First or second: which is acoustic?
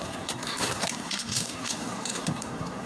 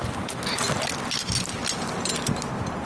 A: second